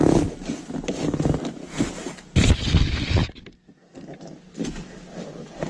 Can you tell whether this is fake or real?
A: real